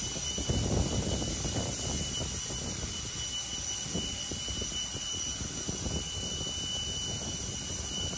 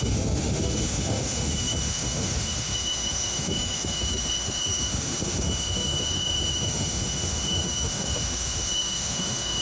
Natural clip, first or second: first